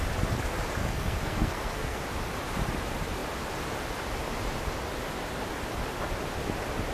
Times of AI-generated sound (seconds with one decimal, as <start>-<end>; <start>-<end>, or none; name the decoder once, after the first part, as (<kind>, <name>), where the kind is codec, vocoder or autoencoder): 0.8-2.0 (codec, SNAC)